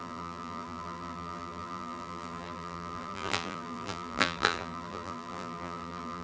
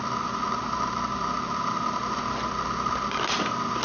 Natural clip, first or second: second